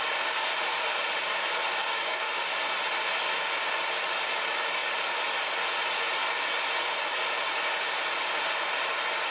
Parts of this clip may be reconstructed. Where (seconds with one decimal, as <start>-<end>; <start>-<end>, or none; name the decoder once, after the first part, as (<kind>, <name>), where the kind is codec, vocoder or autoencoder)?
1.8-2.5 (codec, DAC)